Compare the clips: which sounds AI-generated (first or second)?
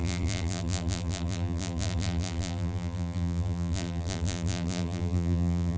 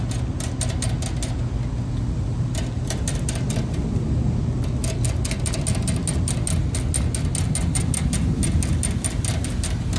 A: first